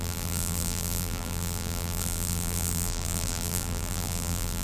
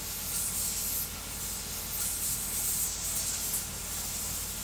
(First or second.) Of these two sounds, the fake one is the first